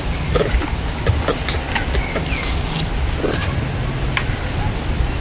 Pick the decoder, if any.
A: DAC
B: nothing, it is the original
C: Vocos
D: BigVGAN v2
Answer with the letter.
B